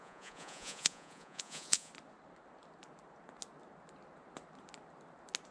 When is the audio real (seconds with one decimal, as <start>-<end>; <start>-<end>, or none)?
1.9-5.5